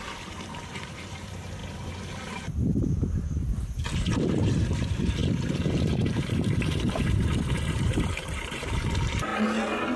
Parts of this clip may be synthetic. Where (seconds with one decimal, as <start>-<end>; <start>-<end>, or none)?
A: 0.0-1.6; 2.3-9.3